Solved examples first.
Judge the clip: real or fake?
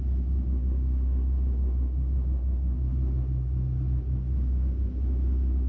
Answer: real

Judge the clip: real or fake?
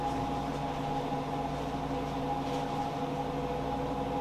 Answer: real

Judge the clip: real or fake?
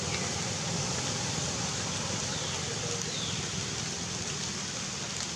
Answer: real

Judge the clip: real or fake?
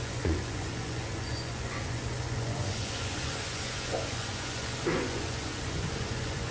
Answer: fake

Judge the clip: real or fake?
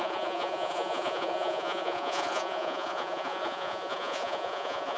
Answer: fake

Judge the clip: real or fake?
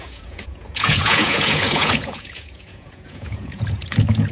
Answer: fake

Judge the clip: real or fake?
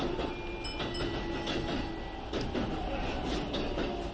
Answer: real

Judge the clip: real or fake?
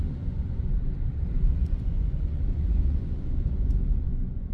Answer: fake